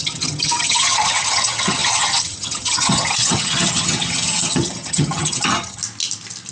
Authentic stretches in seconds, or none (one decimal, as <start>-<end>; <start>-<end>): 5.8-6.5